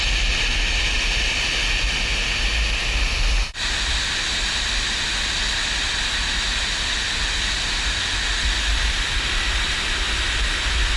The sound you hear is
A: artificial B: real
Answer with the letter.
B